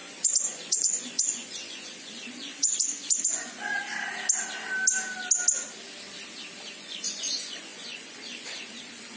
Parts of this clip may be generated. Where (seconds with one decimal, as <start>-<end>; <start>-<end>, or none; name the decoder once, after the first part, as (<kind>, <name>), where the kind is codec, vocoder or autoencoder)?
0.0-3.7 (vocoder, Vocos); 6.7-9.2